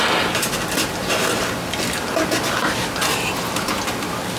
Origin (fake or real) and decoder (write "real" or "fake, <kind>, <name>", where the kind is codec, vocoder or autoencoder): real